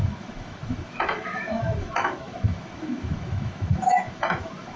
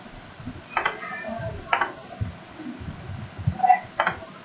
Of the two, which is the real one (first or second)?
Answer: second